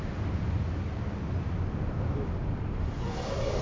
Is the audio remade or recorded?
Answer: recorded